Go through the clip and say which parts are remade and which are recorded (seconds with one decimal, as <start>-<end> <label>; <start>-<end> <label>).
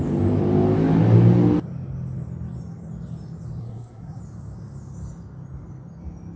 0.0-3.6 recorded; 3.6-4.2 remade; 4.2-6.4 recorded